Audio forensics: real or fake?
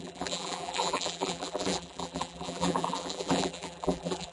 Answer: fake